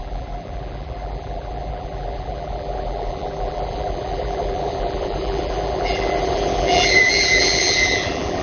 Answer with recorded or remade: remade